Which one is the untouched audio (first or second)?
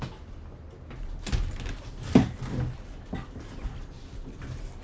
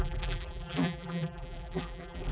first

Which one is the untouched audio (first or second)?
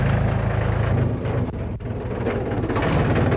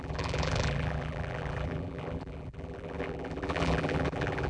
first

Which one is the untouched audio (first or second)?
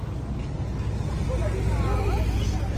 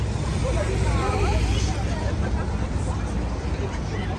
first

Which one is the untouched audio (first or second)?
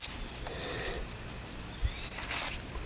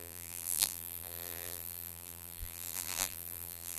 first